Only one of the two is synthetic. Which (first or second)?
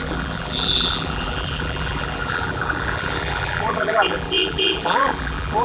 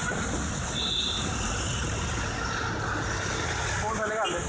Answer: first